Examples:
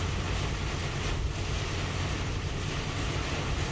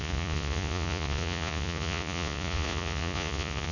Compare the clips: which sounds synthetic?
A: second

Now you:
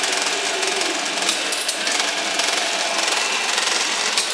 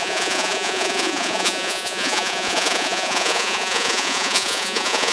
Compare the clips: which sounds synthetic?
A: second